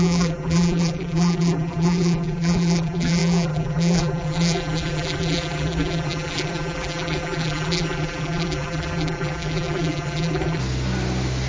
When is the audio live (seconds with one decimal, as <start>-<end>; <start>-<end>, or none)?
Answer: 10.6-11.5